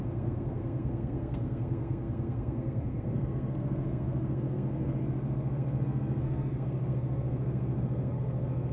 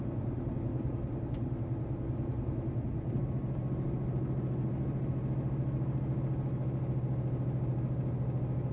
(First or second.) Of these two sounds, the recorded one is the second